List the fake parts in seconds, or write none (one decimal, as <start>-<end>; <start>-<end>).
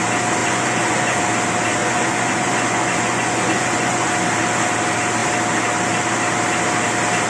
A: 0.4-1.2; 1.8-4.1